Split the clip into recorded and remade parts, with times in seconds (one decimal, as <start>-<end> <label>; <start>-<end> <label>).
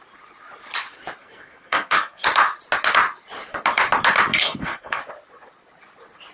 0.0-1.2 recorded; 1.2-2.2 remade; 2.2-4.3 recorded; 4.3-5.0 remade; 5.0-6.3 recorded